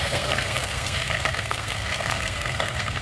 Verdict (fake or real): fake